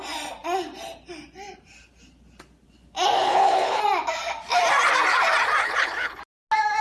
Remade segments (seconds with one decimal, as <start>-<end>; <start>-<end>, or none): 3.2-3.8; 5.6-6.2

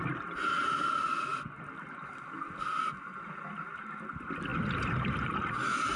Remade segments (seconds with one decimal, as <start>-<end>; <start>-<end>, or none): none

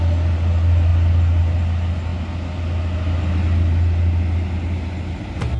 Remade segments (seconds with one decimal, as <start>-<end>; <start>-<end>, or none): none

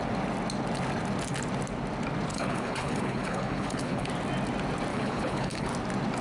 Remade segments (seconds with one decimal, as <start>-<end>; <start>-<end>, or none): 2.3-4.1; 4.9-5.7

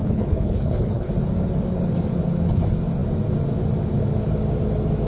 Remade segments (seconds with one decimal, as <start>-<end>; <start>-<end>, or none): 0.0-1.1

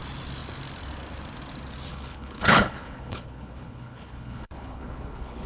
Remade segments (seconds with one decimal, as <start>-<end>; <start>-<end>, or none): 1.9-5.5